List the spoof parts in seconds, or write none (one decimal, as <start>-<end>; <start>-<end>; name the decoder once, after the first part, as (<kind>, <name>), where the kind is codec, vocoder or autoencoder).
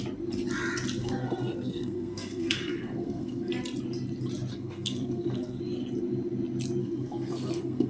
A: 1.0-3.5 (codec, SNAC); 4.5-5.6; 6.8-7.9